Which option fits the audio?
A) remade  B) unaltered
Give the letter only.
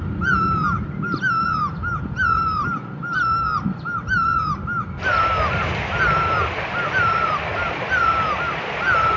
B